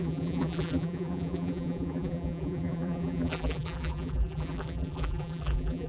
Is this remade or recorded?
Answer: remade